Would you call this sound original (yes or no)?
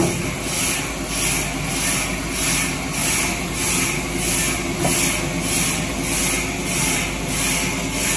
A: yes